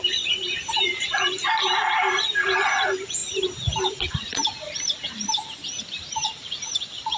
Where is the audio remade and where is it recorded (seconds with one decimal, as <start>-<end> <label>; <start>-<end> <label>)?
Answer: 0.0-7.2 recorded